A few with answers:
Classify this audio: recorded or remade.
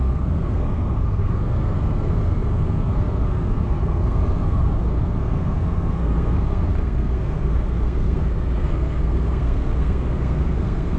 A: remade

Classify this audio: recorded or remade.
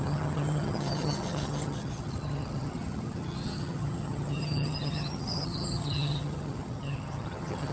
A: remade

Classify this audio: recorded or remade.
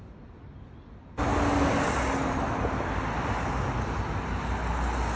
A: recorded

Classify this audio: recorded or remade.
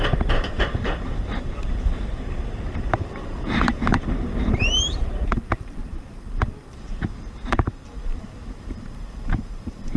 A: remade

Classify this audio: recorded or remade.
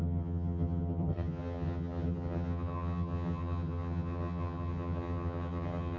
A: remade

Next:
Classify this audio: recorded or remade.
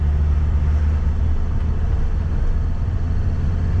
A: recorded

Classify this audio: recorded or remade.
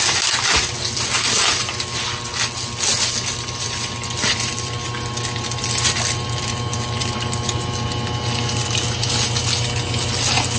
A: recorded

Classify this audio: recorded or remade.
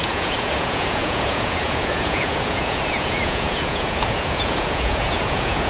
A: remade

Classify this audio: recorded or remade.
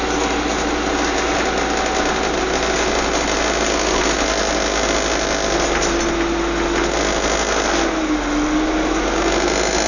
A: recorded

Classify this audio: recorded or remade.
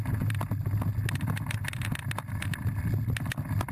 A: recorded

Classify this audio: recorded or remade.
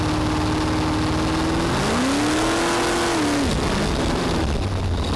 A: recorded